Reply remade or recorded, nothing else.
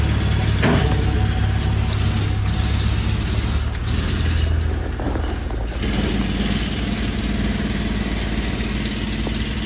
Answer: recorded